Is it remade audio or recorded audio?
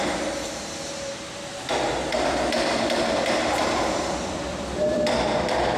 remade